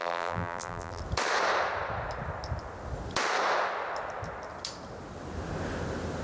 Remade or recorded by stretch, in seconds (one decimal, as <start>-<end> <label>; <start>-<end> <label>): 0.0-1.0 remade; 1.0-6.2 recorded

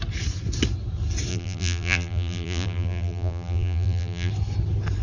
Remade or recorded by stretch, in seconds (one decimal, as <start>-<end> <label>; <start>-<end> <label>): 0.0-1.3 recorded; 1.3-4.3 remade; 4.3-5.0 recorded